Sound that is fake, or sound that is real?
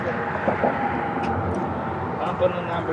real